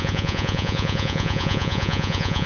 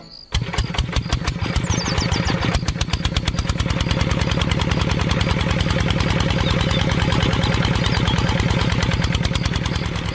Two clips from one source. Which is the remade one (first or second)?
first